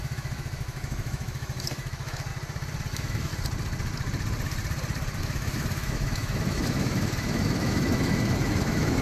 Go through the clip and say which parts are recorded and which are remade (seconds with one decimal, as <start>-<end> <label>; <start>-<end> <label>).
0.0-2.3 remade; 2.3-2.9 recorded; 2.9-3.3 remade; 3.3-5.2 recorded; 5.2-9.0 remade